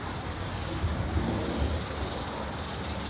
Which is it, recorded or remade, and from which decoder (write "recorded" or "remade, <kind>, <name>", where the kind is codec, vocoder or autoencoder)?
recorded